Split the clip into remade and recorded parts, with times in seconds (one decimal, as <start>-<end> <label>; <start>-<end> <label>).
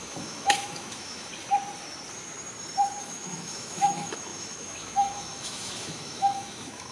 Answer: 0.0-1.3 remade; 1.3-3.0 recorded; 3.0-6.9 remade